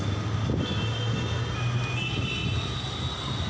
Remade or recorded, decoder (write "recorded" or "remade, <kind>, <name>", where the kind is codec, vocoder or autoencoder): recorded